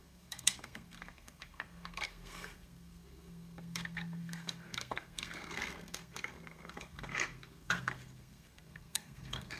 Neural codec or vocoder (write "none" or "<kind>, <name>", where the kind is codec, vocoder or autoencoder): codec, SNAC